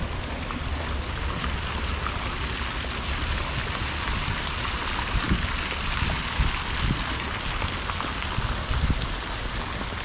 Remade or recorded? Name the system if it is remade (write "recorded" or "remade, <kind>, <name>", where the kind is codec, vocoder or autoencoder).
recorded